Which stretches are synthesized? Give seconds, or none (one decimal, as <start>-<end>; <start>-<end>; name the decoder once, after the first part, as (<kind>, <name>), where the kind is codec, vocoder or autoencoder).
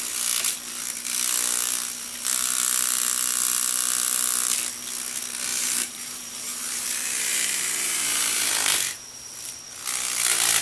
5.5-8.5 (vocoder, BigVGAN v2)